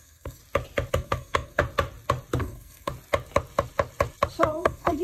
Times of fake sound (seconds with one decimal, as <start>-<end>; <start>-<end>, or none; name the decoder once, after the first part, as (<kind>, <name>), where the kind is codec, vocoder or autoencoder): 0.0-0.4 (codec, SNAC); 0.9-1.6; 2.4-2.9; 4.5-5.0